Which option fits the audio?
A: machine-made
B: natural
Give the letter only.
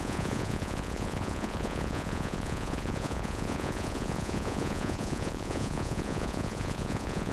A